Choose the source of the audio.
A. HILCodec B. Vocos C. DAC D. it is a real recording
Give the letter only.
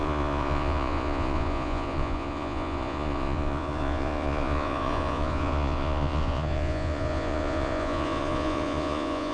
B